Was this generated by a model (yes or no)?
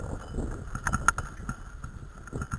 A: no